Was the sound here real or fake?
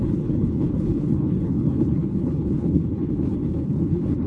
fake